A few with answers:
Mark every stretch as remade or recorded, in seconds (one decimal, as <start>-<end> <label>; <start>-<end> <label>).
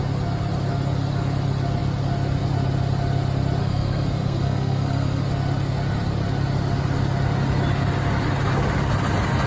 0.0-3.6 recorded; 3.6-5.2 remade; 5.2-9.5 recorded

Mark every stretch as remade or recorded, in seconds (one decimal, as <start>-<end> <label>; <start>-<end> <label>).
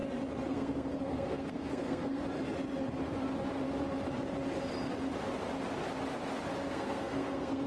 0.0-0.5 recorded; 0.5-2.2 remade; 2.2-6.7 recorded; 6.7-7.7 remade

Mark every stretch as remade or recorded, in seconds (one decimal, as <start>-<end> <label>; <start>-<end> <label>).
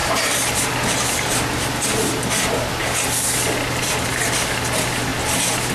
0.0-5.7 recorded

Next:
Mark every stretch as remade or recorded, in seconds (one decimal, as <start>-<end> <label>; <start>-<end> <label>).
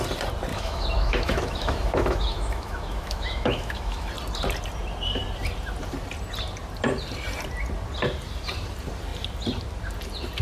0.0-0.5 recorded; 0.5-4.1 remade; 4.1-10.4 recorded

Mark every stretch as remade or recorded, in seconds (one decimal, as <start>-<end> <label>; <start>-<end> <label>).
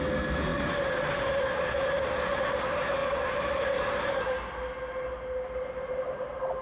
0.0-6.6 recorded